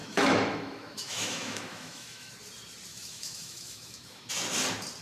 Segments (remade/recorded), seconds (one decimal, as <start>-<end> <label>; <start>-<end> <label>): 0.0-2.3 remade; 2.3-2.9 recorded; 2.9-4.3 remade; 4.3-5.0 recorded